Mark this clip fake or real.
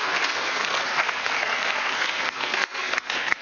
fake